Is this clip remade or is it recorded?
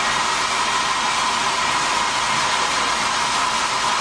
recorded